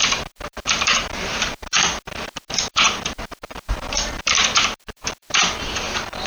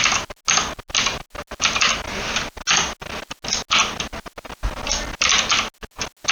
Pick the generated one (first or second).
first